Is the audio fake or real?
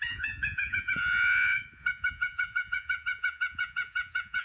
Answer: fake